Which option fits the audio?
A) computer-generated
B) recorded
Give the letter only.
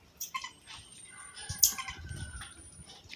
B